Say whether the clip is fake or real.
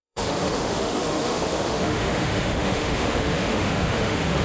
fake